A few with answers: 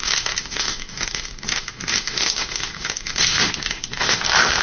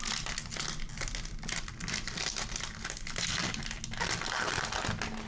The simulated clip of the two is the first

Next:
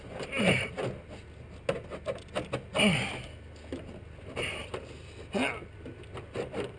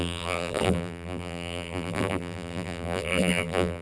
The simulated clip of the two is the second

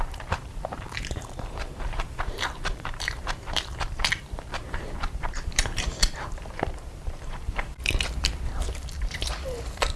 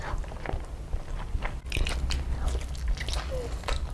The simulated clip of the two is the first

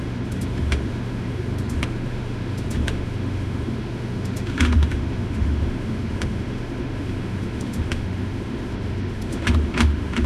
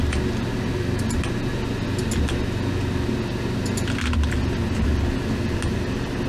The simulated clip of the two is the first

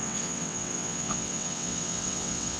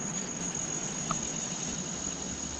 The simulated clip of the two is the first